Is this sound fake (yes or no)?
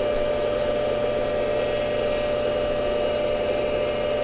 no